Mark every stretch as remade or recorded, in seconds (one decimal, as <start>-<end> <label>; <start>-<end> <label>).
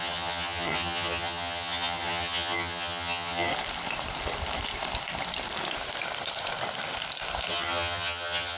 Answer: 0.0-3.5 remade; 3.5-7.5 recorded; 7.5-8.6 remade